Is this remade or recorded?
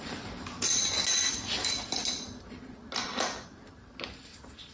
recorded